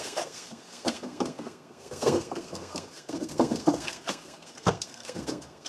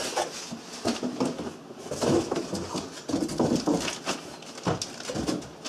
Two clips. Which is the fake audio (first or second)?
first